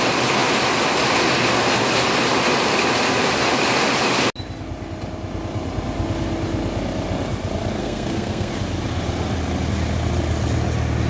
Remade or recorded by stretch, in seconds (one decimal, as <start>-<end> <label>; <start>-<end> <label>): 0.0-7.8 recorded; 7.8-8.5 remade; 8.5-11.1 recorded